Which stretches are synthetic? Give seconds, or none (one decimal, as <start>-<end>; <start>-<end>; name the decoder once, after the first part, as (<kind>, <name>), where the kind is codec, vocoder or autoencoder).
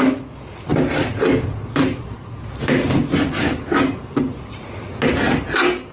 0.7-4.2 (vocoder, BigVGAN v2)